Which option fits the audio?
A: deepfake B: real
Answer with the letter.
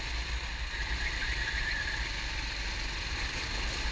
A